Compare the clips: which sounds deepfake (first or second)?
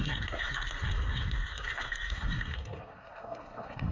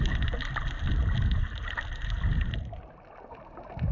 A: first